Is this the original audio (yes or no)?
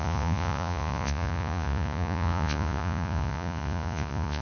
no